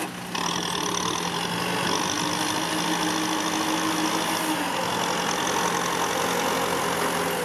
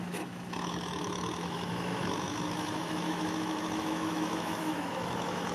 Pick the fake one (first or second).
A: second